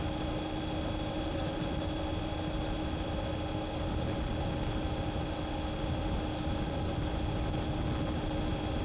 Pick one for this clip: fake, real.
real